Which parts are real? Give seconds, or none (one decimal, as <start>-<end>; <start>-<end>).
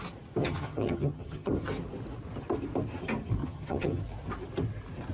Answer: 0.0-0.4; 1.5-3.4; 4.0-5.1